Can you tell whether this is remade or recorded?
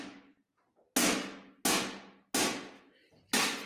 recorded